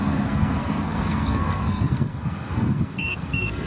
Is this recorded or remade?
remade